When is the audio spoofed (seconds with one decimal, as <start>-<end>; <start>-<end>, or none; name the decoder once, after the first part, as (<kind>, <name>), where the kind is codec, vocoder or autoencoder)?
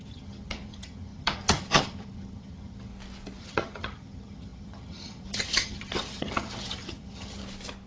0.0-2.9 (vocoder, HiFi-GAN); 3.4-7.4